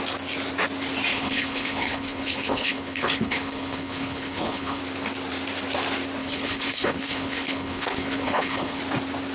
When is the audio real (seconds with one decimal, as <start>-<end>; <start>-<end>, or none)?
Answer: 0.0-1.1; 4.8-6.2; 8.8-9.3